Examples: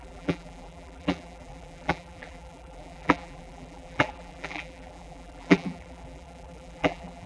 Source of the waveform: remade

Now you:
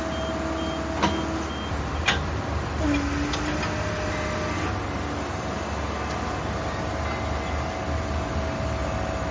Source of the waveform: recorded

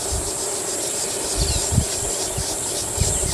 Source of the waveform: remade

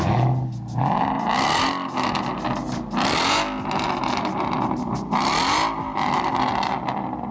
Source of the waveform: recorded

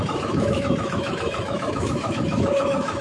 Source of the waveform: remade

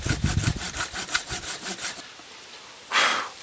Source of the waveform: recorded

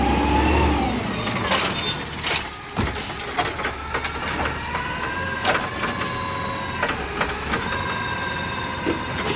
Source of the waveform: recorded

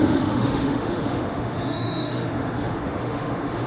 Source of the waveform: remade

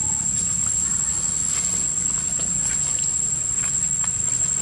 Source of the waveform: recorded